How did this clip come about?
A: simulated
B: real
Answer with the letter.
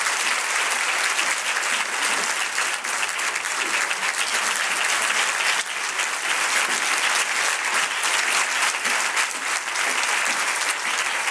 B